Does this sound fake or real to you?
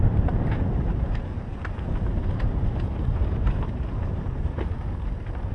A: fake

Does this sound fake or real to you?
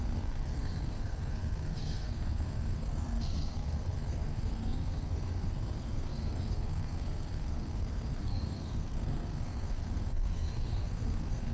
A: fake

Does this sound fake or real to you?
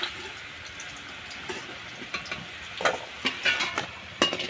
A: real